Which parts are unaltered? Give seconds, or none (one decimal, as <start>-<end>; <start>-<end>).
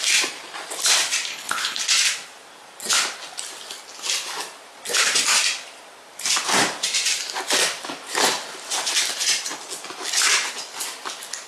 0.0-1.3; 1.8-11.5